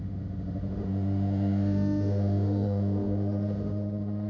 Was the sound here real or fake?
fake